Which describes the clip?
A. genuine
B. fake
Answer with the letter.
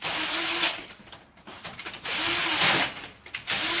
A